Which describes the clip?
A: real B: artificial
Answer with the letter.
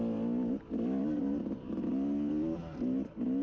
A